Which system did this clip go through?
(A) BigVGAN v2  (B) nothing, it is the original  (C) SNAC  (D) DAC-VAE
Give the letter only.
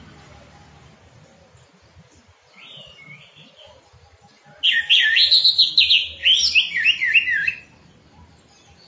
B